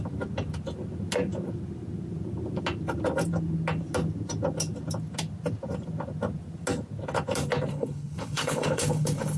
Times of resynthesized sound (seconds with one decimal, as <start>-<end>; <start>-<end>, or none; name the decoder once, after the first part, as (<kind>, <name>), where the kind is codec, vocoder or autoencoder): 7.7-9.4 (codec, HILCodec)